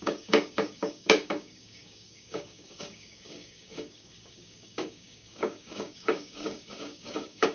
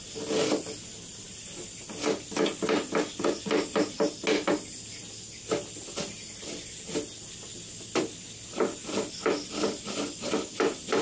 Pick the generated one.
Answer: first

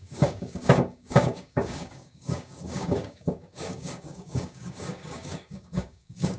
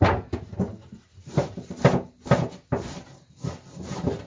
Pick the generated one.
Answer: first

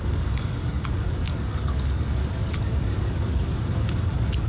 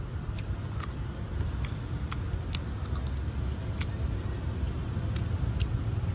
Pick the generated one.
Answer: first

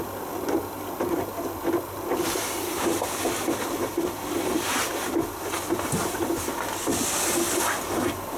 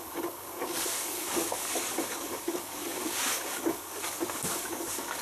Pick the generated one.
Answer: second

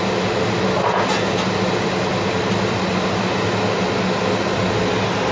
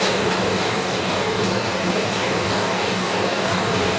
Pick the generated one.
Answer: second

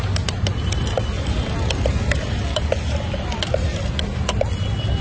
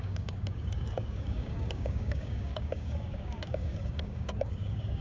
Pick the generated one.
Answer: second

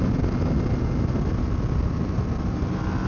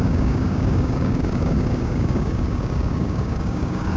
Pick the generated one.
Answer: second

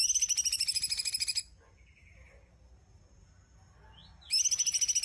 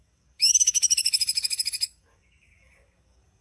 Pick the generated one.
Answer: second